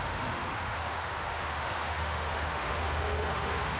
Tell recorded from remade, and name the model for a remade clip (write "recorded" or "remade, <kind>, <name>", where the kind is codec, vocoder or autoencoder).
remade, autoencoder, DAC-VAE